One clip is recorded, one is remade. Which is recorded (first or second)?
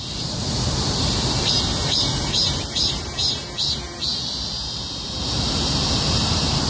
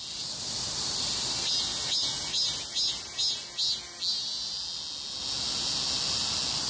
second